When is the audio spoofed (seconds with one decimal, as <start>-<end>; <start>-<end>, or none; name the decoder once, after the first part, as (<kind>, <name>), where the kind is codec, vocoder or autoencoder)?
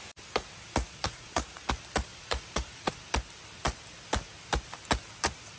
0.8-1.7 (vocoder, Vocos); 2.1-2.9